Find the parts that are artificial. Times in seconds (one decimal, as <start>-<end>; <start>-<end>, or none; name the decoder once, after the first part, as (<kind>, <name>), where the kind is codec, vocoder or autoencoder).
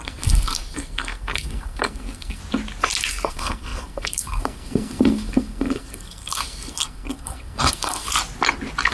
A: 0.0-2.4 (codec, SNAC); 3.1-8.1